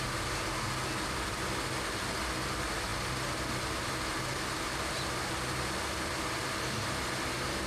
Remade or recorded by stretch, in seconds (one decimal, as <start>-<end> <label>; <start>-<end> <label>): 0.0-7.7 recorded